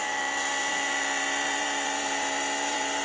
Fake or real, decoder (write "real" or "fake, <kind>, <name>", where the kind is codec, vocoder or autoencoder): fake, vocoder, BigVGAN v2